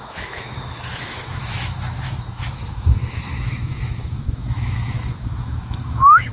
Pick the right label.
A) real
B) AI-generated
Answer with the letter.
B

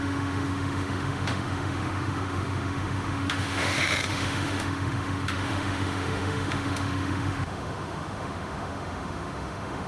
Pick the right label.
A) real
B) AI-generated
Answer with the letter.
B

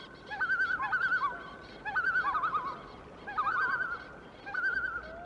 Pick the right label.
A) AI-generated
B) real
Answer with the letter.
B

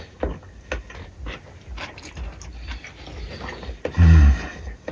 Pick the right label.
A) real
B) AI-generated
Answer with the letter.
A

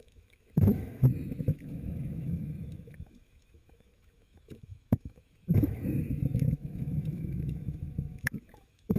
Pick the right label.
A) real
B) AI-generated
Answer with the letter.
B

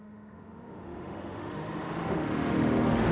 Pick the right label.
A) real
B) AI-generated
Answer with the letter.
B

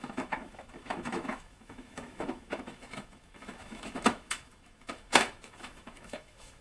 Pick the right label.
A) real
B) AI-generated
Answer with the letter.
B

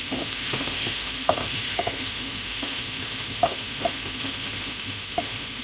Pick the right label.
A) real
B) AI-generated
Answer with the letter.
B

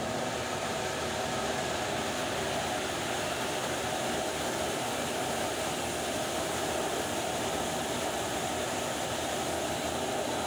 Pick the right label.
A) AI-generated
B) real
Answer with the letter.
B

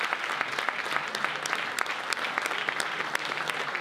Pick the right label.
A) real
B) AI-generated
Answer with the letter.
A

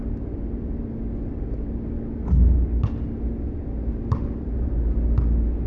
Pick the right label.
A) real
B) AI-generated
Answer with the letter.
A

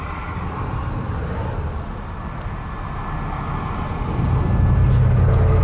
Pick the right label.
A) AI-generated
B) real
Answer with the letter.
B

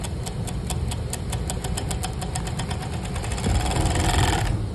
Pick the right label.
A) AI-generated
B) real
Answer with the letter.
B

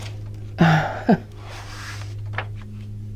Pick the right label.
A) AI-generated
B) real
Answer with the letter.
B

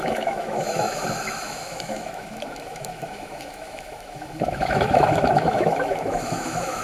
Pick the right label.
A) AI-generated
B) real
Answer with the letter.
A